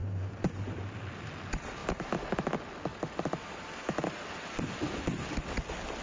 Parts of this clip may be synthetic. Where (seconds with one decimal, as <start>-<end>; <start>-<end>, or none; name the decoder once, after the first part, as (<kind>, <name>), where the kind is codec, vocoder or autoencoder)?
0.0-0.9 (vocoder, BigVGAN v2); 1.8-2.5; 2.9-4.6